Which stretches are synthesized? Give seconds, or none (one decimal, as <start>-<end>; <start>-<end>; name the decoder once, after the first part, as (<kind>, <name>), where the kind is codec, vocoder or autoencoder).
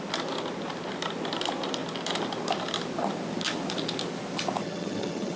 4.6-5.4 (vocoder, HiFi-GAN)